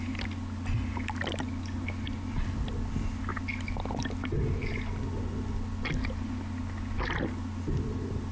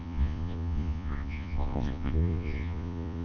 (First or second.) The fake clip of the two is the second